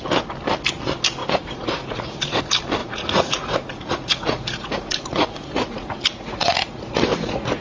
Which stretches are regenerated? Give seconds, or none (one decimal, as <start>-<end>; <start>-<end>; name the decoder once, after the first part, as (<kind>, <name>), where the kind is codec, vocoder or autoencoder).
1.2-2.4 (vocoder, Vocos); 2.8-7.6